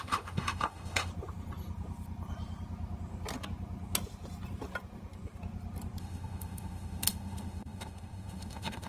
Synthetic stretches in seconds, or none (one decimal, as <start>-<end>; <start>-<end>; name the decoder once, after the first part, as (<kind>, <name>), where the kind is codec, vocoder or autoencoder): 0.0-1.1 (autoencoder, DAC-VAE); 6.0-8.9